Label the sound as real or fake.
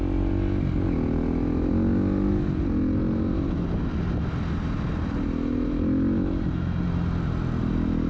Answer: real